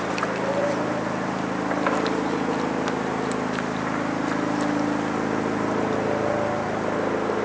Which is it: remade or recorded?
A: recorded